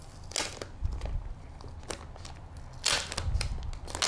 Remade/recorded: recorded